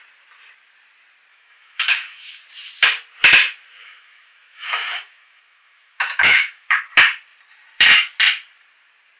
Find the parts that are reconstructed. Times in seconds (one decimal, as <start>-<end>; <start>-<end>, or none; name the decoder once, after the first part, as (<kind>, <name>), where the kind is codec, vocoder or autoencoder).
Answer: 1.3-2.4 (autoencoder, DAC-VAE); 3.8-6.8